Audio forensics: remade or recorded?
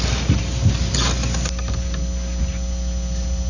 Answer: recorded